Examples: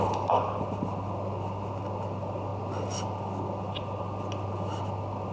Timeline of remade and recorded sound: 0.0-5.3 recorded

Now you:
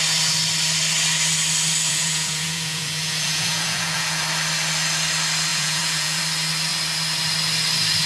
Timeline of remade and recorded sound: 0.0-1.9 recorded; 1.9-4.2 remade; 4.2-5.5 recorded; 5.5-6.2 remade; 6.2-8.1 recorded

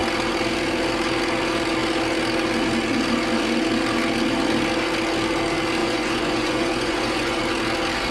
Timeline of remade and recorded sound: 0.0-5.8 recorded; 5.8-7.4 remade; 7.4-8.1 recorded

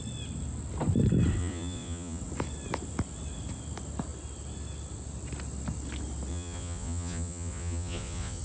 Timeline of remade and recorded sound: 0.0-1.4 recorded; 1.4-2.2 remade; 2.2-6.3 recorded; 6.3-8.4 remade

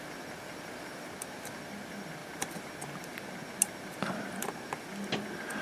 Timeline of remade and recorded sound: 0.0-5.6 recorded

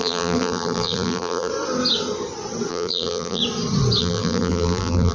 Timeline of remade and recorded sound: 0.0-1.5 remade; 1.5-2.7 recorded; 2.7-3.4 remade; 3.4-4.0 recorded; 4.0-5.1 remade

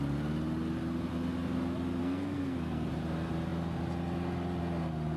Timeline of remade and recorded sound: 0.0-2.0 recorded; 2.0-2.9 remade; 2.9-5.2 recorded